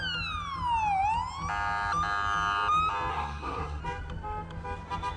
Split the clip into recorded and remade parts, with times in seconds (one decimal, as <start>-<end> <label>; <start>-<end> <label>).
0.0-3.1 recorded; 3.1-3.8 remade; 3.8-5.2 recorded